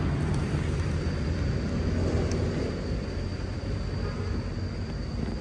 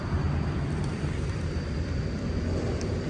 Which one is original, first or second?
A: first